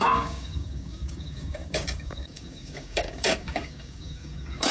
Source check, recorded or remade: remade